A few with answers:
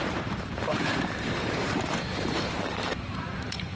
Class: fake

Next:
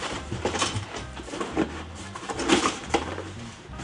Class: fake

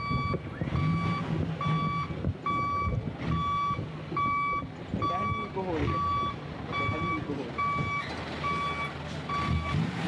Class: real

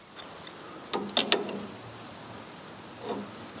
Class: real